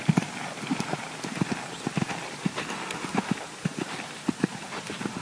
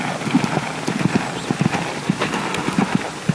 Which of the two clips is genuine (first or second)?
second